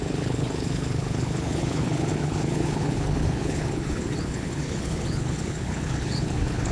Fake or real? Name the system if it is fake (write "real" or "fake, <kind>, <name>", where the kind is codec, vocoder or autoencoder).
fake, codec, HILCodec